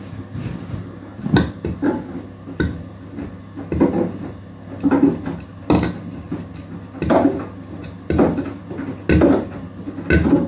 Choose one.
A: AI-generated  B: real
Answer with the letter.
B